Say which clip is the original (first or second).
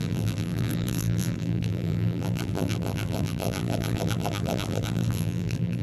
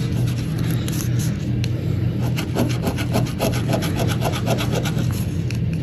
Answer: second